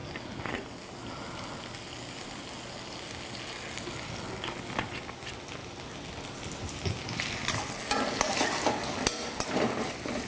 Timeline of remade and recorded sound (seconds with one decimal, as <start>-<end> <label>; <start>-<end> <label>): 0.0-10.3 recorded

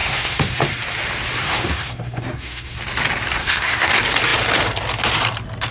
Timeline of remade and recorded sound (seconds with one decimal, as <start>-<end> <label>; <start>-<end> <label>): 0.0-0.6 remade; 0.6-1.4 recorded; 1.4-2.8 remade; 2.8-3.4 recorded; 3.4-3.9 remade; 3.9-5.7 recorded

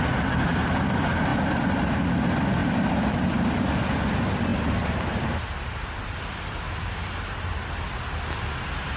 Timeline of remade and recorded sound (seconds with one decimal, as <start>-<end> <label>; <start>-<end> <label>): 0.0-9.0 recorded

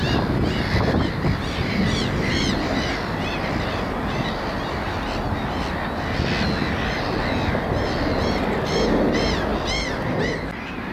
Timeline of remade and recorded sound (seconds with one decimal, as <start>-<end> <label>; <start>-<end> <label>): 0.0-10.9 recorded

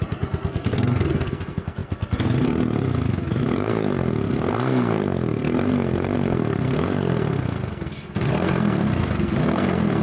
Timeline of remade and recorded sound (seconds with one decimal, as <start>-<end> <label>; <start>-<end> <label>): 0.0-10.0 remade

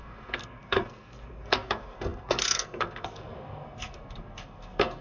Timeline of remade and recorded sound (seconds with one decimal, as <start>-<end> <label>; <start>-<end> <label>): 0.0-5.0 remade